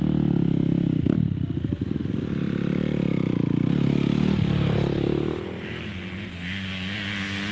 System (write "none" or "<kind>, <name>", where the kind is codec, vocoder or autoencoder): none